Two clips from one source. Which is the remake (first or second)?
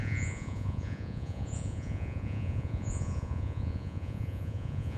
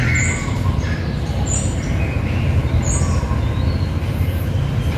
first